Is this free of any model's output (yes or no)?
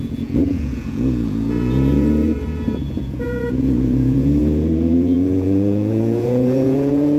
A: no